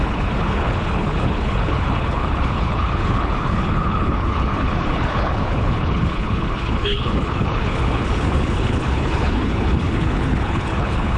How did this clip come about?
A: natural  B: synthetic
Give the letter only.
B